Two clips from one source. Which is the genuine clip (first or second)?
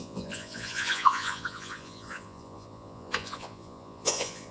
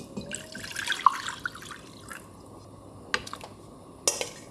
second